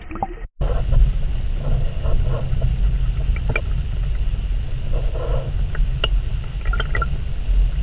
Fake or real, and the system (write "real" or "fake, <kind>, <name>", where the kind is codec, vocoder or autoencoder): real